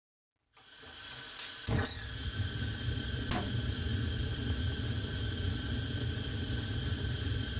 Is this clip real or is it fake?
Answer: real